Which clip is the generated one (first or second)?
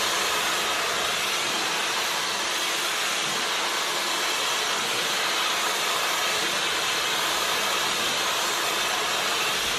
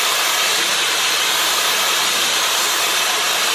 second